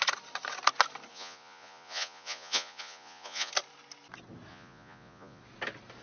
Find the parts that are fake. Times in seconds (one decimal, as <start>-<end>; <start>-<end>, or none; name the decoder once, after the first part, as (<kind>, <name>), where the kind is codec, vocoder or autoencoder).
1.1-3.5 (vocoder, Vocos); 4.5-5.4